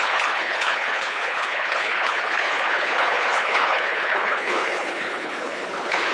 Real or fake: fake